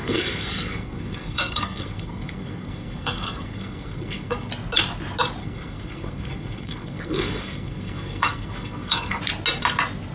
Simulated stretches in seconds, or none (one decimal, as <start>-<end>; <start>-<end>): 0.0-4.5; 5.4-9.2